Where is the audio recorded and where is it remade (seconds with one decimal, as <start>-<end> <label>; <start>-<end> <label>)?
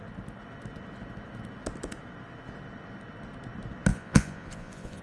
0.0-3.9 recorded; 3.9-5.0 remade